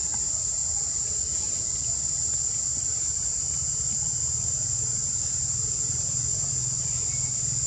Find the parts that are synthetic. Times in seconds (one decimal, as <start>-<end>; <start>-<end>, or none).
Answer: none